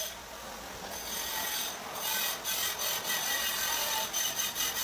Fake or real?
fake